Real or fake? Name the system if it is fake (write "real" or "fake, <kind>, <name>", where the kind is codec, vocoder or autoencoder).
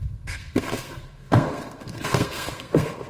fake, codec, SNAC